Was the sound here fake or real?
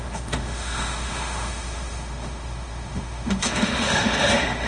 fake